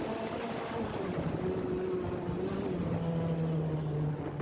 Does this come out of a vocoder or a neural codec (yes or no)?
no